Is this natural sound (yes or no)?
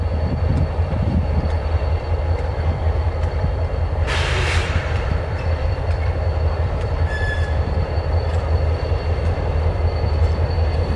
no